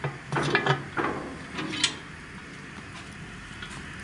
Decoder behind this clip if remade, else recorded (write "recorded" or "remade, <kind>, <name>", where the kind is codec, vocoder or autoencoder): recorded